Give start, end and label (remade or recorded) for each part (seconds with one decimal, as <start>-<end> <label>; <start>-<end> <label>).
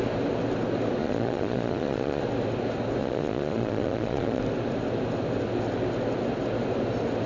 0.0-1.0 recorded; 1.0-2.2 remade; 2.2-3.0 recorded; 3.0-4.4 remade; 4.4-7.3 recorded